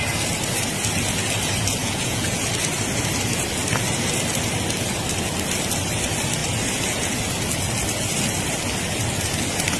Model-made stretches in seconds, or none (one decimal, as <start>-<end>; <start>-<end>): 1.8-2.4